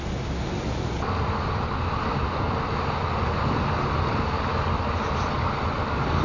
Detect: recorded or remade recorded